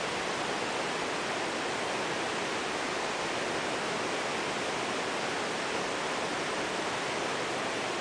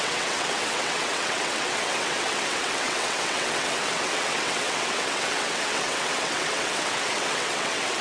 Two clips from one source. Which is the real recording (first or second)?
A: first